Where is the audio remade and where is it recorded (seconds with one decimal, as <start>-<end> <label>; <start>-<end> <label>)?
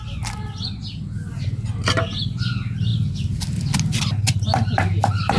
0.0-4.5 recorded; 4.5-5.4 remade